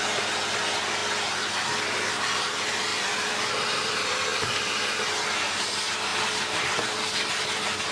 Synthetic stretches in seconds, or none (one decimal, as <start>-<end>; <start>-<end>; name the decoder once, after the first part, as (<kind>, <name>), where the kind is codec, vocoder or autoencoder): 2.9-3.5 (vocoder, BigVGAN v2); 6.1-7.4